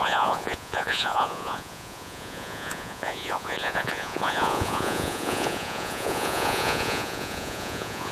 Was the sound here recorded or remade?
remade